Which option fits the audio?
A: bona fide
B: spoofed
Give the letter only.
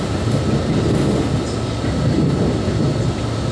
A